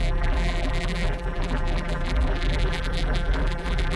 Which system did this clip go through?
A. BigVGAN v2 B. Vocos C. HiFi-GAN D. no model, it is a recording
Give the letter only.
A